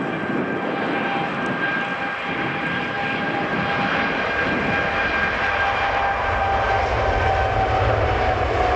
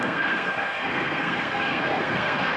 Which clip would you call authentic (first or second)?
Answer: first